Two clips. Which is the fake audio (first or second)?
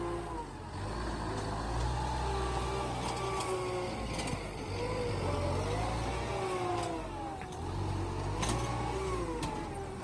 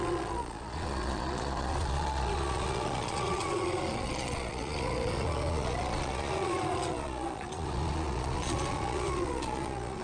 second